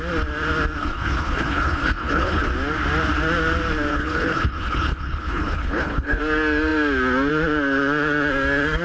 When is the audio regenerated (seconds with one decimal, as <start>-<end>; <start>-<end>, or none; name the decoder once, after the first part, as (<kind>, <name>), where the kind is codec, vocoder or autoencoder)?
0.8-2.5 (codec, HILCodec); 3.9-6.2